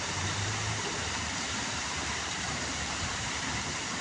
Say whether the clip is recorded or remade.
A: remade